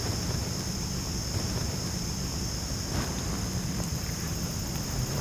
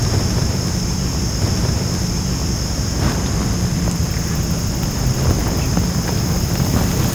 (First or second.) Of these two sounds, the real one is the second